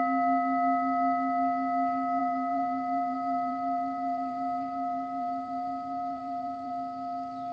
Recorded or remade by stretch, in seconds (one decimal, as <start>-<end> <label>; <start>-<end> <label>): 0.0-2.2 recorded; 2.2-6.7 remade; 6.7-7.5 recorded